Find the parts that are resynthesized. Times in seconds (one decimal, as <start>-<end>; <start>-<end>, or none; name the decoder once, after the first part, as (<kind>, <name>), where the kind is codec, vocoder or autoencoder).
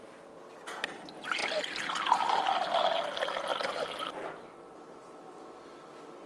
none